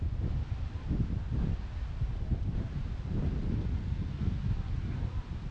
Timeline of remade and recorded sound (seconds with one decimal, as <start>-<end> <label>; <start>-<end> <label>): 0.0-3.8 recorded; 3.8-4.4 remade; 4.4-5.5 recorded